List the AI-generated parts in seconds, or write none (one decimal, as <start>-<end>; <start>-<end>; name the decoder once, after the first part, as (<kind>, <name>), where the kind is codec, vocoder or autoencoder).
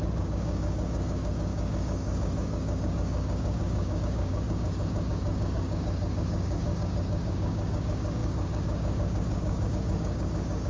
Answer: 0.0-10.7 (codec, DAC)